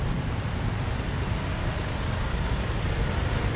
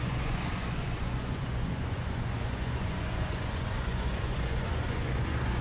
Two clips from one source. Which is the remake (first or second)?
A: second